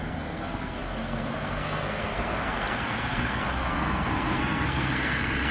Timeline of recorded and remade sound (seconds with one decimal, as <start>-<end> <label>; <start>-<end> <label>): 0.0-5.5 remade